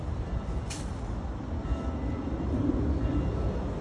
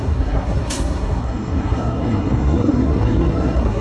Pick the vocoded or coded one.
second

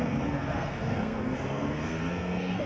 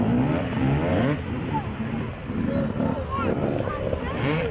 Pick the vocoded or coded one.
first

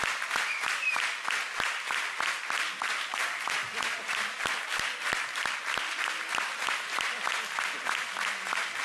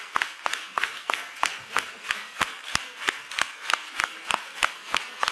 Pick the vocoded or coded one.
second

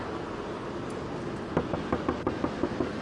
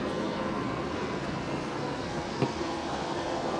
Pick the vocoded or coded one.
second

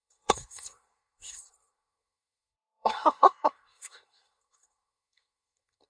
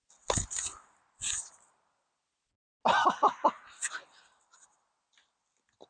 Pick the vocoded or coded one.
first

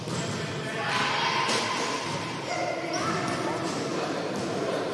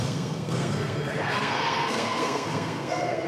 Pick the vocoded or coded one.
second